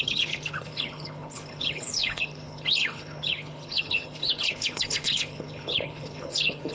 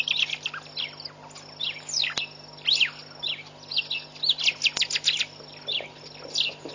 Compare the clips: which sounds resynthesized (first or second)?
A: first